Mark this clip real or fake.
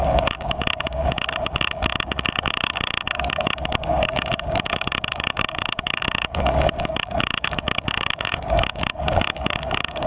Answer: fake